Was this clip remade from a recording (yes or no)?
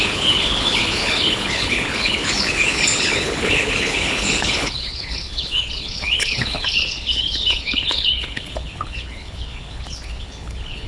yes